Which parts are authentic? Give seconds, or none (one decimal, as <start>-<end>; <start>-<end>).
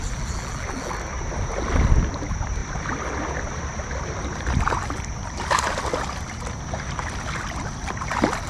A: 0.0-2.6; 7.2-8.5